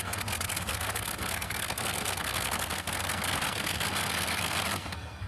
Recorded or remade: remade